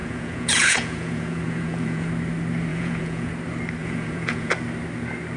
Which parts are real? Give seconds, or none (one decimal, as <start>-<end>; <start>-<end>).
2.1-2.7; 3.3-3.8; 4.5-5.4